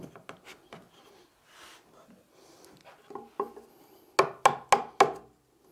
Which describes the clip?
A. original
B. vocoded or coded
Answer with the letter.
A